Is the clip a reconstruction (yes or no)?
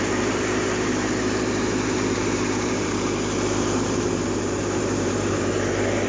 yes